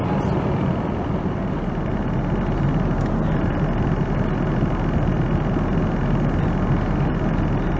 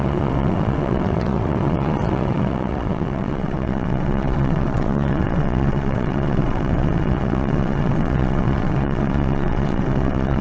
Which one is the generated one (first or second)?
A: second